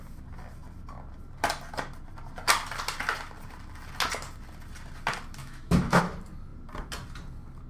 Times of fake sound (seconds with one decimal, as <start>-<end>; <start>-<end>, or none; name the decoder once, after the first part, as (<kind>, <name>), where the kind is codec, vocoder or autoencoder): 5.4-6.0 (autoencoder, DAC-VAE)